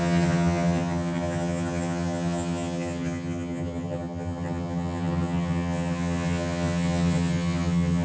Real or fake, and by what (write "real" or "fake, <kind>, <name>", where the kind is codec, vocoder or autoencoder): fake, vocoder, HiFi-GAN